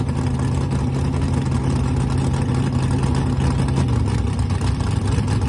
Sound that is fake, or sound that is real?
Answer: real